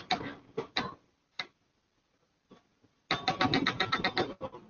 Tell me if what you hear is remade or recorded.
recorded